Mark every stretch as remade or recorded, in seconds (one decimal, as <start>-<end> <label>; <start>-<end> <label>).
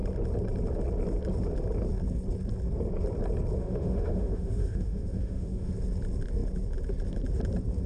0.0-3.6 recorded; 3.6-5.7 remade; 5.7-7.9 recorded